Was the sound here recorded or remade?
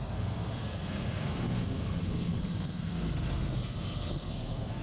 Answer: remade